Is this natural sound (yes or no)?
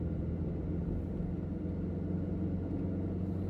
yes